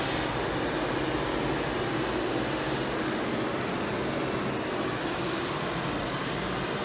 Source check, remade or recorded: recorded